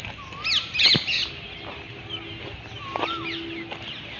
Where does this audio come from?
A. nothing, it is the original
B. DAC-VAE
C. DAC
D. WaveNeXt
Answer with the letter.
A